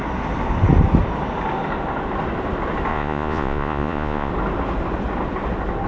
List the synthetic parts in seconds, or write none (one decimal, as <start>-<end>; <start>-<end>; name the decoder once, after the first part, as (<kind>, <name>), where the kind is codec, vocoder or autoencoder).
2.9-4.3 (vocoder, Vocos)